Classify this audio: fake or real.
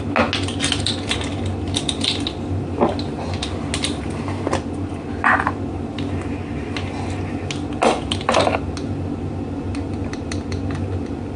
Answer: real